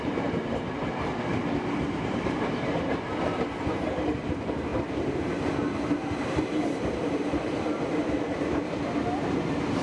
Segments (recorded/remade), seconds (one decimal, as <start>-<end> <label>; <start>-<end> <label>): 0.0-1.1 remade; 1.1-1.9 recorded; 1.9-9.8 remade